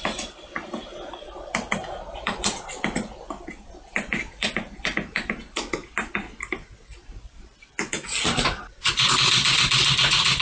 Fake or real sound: fake